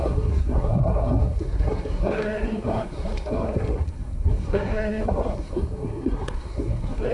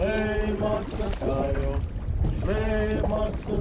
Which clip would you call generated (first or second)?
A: first